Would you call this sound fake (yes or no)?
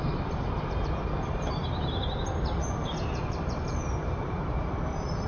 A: yes